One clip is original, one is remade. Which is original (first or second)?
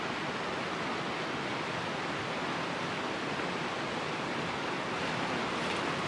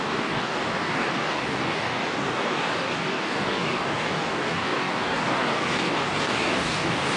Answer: first